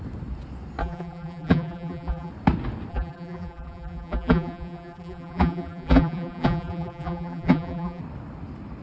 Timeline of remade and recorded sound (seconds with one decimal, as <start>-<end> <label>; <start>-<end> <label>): 0.0-0.8 recorded; 0.8-2.3 remade; 2.3-2.9 recorded; 2.9-8.0 remade; 8.0-8.8 recorded